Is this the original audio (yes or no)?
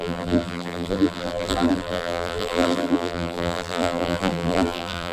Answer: no